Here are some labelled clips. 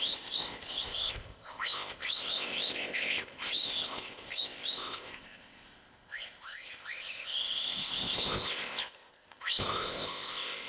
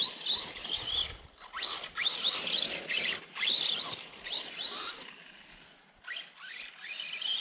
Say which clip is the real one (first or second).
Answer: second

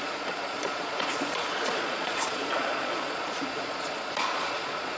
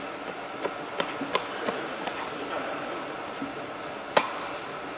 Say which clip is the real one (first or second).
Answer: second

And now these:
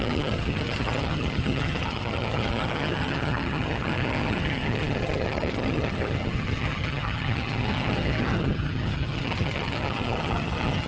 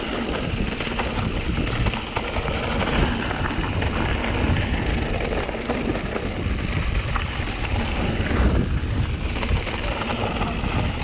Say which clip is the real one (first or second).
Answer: second